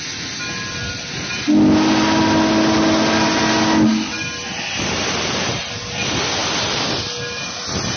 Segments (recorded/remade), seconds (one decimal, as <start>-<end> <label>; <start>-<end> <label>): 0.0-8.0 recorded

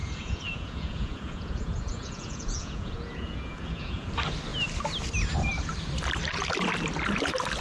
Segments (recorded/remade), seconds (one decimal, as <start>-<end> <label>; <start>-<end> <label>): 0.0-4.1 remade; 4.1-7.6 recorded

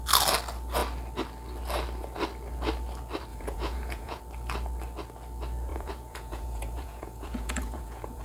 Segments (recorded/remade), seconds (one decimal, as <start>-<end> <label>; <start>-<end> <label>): 0.0-3.3 recorded; 3.3-4.2 remade; 4.2-5.7 recorded; 5.7-8.2 remade